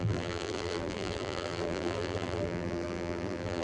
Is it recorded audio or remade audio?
remade